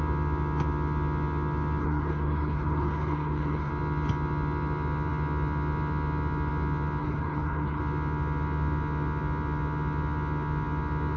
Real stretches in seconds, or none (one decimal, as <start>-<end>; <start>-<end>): 0.0-1.8; 3.7-7.0; 7.8-11.2